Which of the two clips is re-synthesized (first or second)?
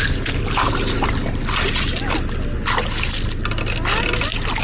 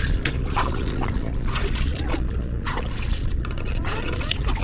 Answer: second